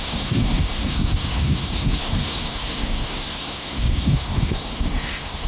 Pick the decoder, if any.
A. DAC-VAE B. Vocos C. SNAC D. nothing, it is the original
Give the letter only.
C